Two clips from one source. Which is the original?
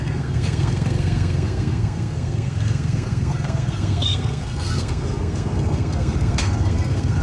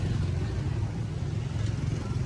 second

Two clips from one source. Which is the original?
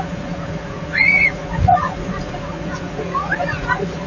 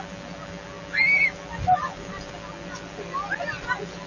second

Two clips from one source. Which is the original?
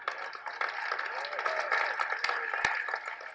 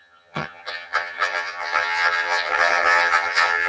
first